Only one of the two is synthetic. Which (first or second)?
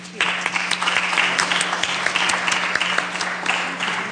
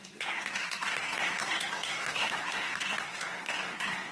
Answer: second